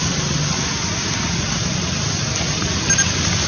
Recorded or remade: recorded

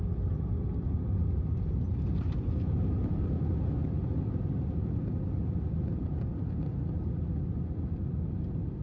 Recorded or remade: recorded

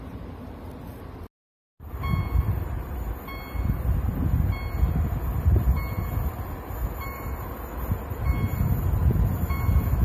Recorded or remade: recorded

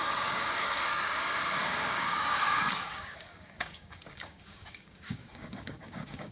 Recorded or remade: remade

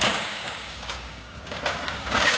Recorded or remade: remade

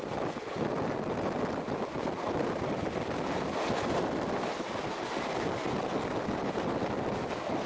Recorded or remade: recorded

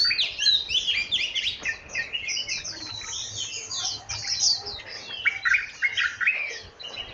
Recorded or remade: recorded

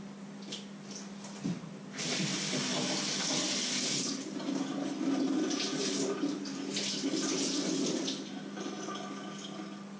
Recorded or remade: recorded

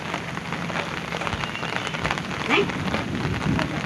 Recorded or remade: recorded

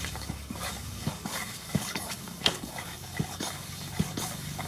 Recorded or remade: remade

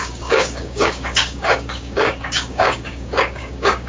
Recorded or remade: remade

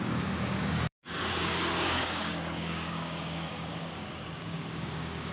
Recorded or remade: remade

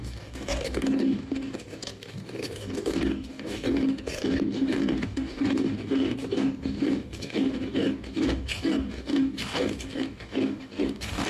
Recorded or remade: remade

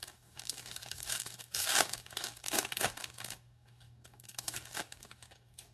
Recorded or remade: remade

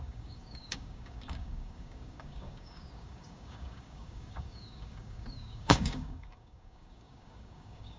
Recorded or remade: remade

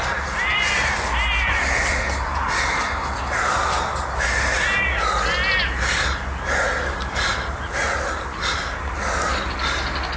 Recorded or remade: recorded